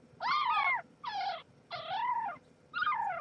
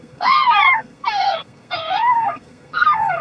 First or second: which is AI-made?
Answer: second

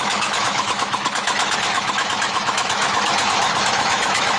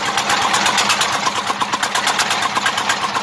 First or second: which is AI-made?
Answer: first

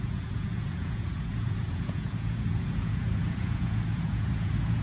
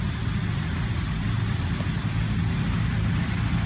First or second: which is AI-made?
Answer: first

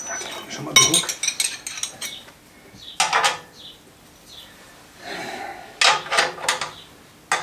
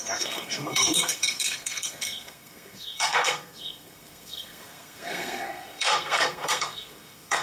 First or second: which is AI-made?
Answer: second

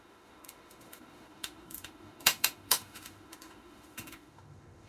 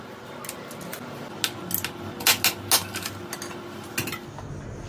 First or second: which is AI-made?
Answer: first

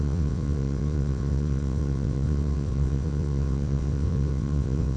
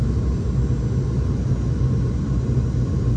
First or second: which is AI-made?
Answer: first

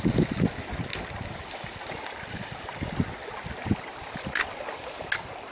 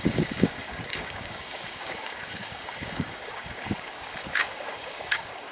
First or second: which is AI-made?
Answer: second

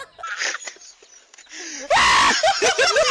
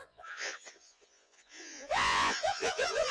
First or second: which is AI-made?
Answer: second